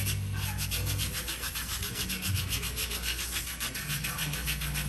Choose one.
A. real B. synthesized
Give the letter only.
B